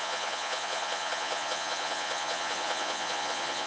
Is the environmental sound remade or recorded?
remade